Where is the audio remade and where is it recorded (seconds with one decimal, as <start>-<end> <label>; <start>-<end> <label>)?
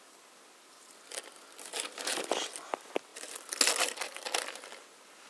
0.0-1.7 recorded; 1.7-2.3 remade; 2.3-5.3 recorded